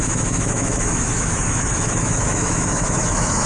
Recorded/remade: remade